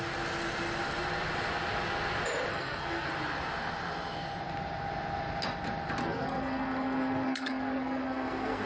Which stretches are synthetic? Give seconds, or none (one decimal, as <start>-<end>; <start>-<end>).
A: 2.5-3.1; 6.0-8.7